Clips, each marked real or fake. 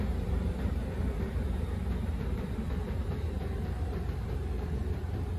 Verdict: fake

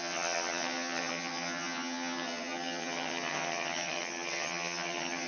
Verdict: fake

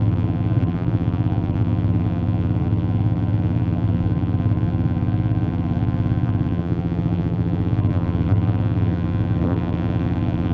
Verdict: fake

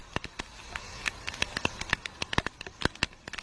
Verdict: real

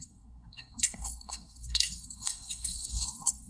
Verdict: fake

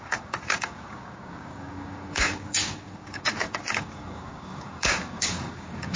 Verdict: fake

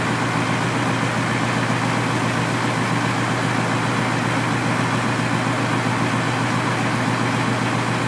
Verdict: real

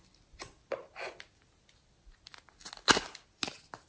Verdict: real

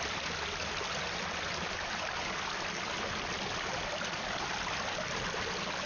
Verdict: real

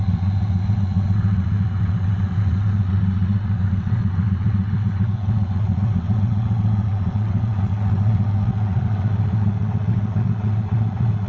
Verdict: fake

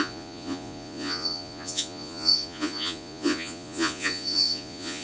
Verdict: fake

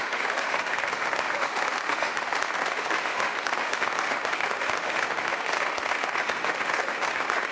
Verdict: fake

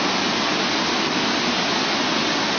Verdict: real